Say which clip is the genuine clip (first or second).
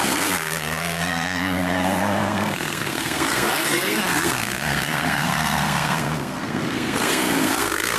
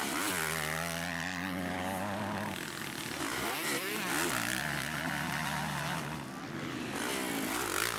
second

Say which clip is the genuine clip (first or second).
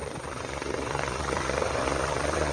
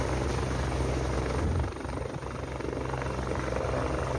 second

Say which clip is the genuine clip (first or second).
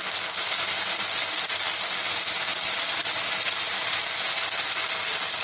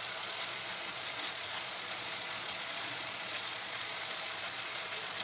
first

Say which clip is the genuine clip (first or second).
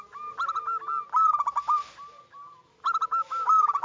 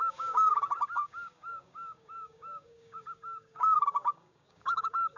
first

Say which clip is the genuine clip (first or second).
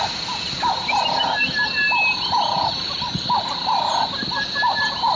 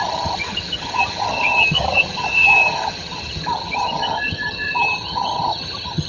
first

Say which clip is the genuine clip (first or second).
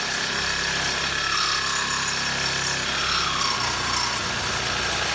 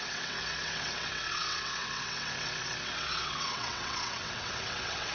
first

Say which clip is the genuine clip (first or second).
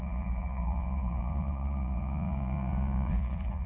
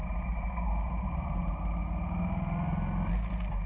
second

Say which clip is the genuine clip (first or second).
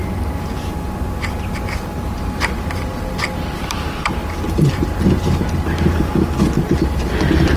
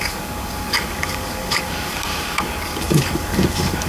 first